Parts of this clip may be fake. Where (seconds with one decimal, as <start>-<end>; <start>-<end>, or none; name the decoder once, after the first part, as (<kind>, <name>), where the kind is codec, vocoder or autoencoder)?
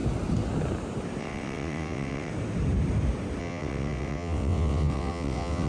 1.2-2.3 (vocoder, WaveNeXt); 3.4-5.7